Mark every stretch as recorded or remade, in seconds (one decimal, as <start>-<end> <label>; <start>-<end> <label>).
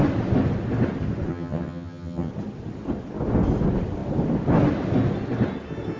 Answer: 0.0-1.3 recorded; 1.3-2.3 remade; 2.3-6.0 recorded